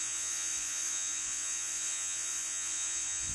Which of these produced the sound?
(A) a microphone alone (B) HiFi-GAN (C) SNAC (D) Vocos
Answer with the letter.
D